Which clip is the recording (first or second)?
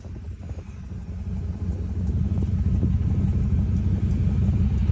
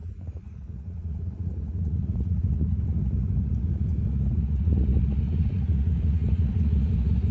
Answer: first